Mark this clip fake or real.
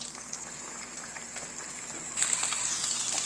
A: real